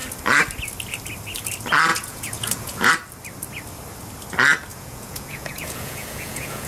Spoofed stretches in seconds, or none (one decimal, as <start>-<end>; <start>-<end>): 1.9-2.9; 4.7-6.7